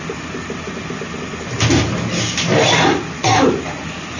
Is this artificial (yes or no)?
no